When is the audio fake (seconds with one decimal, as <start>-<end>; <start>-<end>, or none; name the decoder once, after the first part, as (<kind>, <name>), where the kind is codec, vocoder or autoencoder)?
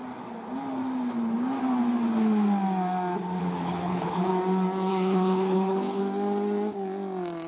3.4-4.3 (codec, HILCodec); 4.9-6.0